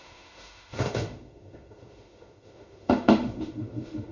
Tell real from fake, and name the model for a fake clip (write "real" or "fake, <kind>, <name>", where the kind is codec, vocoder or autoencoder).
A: fake, autoencoder, DAC-VAE